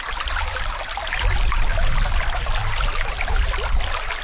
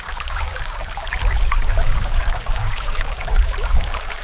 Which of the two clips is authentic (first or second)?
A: first